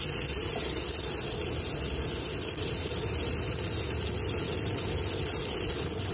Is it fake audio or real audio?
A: real